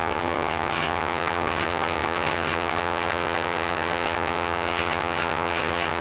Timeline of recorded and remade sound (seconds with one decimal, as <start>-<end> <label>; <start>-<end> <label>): 0.0-6.0 remade